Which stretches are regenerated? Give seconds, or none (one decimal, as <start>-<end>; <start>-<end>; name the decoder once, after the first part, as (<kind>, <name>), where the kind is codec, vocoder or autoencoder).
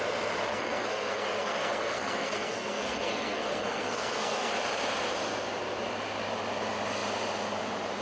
0.5-4.5 (codec, SNAC)